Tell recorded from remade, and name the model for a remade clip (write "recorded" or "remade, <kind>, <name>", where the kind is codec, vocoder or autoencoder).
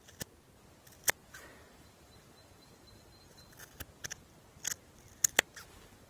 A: recorded